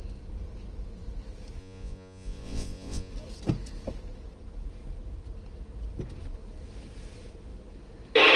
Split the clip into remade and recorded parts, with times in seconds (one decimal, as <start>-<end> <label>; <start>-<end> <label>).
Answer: 0.0-1.6 recorded; 1.6-3.1 remade; 3.1-8.4 recorded